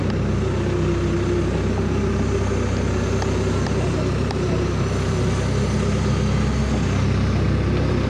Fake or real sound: real